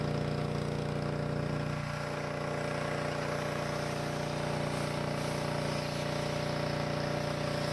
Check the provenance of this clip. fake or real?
real